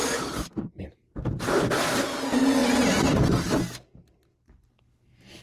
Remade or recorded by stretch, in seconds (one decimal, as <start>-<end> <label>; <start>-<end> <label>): 0.0-5.4 recorded

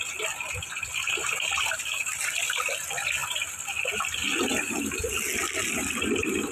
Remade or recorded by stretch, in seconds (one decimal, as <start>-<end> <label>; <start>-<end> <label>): 0.0-6.5 recorded

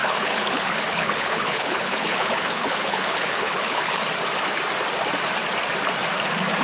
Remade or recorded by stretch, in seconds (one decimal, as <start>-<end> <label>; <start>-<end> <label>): 0.0-4.0 remade; 4.0-6.6 recorded

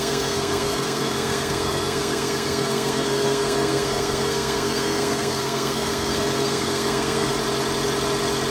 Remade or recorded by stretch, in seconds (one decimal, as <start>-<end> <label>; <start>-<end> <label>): 0.0-7.3 remade; 7.3-8.5 recorded

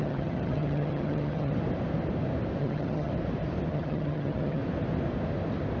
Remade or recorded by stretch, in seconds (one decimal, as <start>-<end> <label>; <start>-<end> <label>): 0.0-1.5 remade; 1.5-2.6 recorded; 2.6-3.1 remade; 3.1-3.7 recorded; 3.7-4.6 remade; 4.6-5.8 recorded

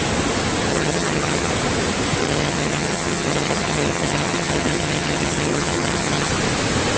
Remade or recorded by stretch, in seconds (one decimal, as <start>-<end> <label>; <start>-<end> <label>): 0.0-0.7 recorded; 0.7-1.5 remade; 1.5-2.2 recorded; 2.2-6.3 remade; 6.3-7.0 recorded